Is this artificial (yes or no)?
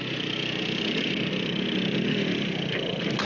no